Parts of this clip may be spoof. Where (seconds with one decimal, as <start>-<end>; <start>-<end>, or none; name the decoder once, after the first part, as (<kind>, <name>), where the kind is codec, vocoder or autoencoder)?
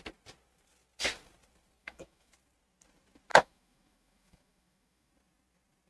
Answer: 1.8-2.3 (autoencoder, DAC-VAE); 3.3-5.1